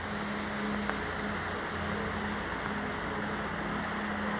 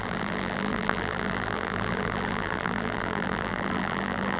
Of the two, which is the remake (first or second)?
second